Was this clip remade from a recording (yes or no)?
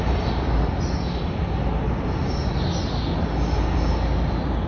no